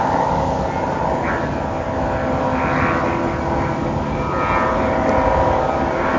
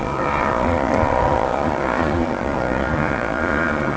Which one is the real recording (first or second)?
first